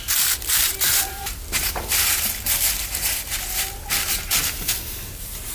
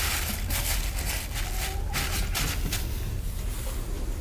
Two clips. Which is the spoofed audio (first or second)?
first